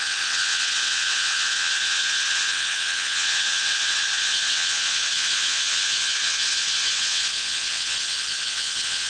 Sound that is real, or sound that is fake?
fake